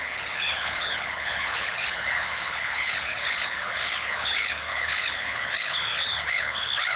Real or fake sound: fake